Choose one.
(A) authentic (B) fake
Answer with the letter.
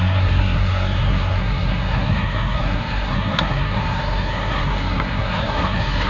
B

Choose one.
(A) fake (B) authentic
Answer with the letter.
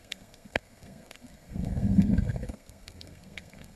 A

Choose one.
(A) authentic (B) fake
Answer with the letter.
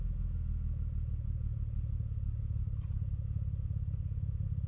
A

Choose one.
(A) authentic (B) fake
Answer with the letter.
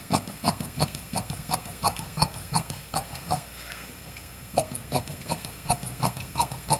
B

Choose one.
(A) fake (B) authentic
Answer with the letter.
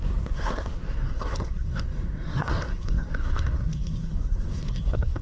A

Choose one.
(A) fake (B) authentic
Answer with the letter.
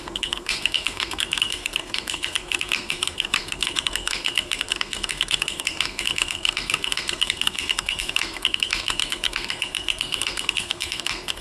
A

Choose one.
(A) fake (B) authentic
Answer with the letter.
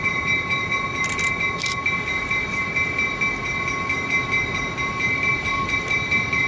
B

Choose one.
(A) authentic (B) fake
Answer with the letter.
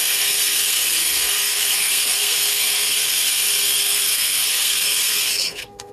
B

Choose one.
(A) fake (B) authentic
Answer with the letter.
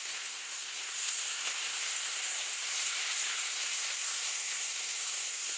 A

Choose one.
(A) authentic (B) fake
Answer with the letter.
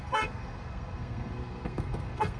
B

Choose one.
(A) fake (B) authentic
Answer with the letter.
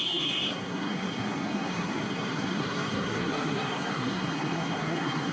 A